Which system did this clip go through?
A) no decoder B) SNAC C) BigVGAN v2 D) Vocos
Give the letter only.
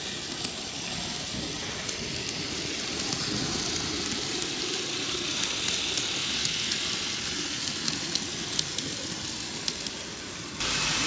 A